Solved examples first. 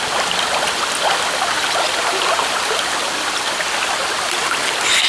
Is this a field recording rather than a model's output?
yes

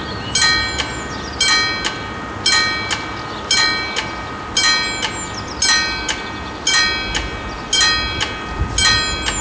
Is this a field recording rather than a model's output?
yes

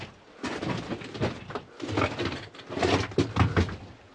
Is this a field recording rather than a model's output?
yes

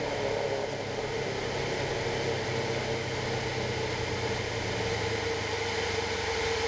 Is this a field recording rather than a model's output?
yes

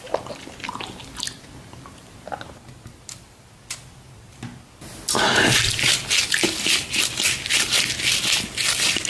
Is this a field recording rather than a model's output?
yes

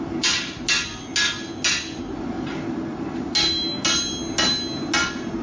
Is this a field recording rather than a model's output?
yes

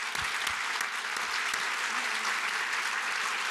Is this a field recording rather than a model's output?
yes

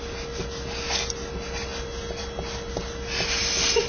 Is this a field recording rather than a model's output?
yes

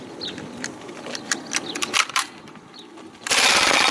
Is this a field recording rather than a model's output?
yes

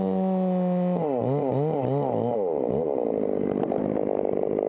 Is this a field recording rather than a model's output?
yes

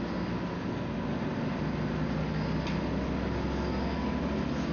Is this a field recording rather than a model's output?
yes